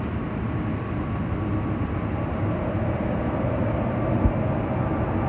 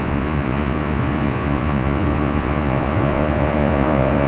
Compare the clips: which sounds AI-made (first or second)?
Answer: second